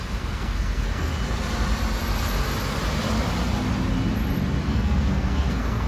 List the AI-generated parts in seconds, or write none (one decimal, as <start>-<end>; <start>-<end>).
0.0-1.1; 4.6-5.9